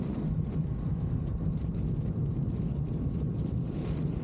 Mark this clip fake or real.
real